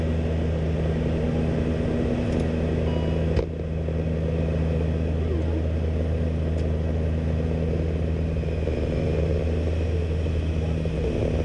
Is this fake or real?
real